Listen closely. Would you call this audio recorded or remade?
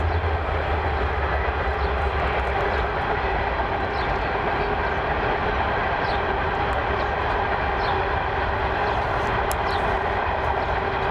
recorded